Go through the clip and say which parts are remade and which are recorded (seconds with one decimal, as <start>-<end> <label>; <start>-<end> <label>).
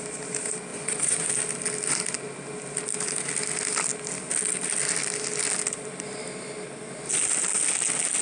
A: 0.0-0.7 recorded; 0.7-1.3 remade; 1.3-8.2 recorded